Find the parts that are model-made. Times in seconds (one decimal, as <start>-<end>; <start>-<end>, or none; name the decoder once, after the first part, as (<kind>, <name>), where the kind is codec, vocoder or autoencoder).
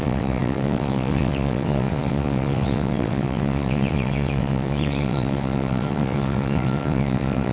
0.0-7.5 (vocoder, WaveNeXt)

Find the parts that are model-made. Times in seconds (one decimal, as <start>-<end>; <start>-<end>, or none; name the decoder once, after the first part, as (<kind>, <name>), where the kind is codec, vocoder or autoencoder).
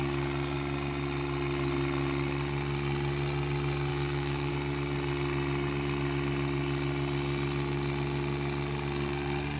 3.9-4.5 (autoencoder, DAC-VAE)